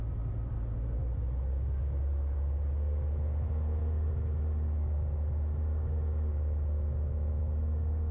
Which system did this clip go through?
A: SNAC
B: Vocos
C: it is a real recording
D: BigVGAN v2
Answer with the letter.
C